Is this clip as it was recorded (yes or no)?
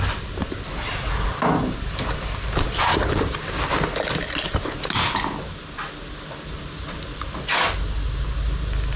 yes